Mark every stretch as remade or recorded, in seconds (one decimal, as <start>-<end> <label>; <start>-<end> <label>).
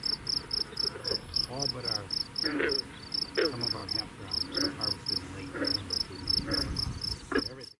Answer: 0.0-1.0 recorded; 1.0-1.5 remade; 1.5-7.8 recorded